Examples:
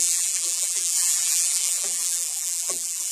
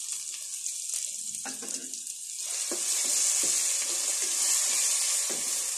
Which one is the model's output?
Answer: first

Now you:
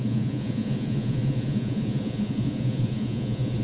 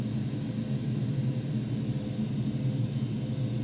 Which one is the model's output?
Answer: first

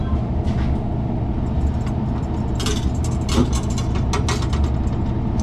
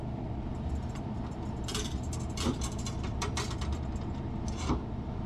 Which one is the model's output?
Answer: second